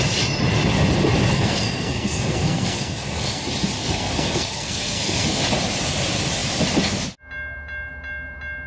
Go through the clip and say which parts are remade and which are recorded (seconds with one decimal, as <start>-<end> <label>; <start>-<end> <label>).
0.0-1.3 recorded; 1.3-3.4 remade; 3.4-3.8 recorded; 3.8-5.4 remade; 5.4-8.7 recorded